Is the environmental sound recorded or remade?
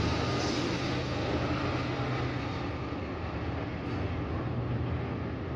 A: recorded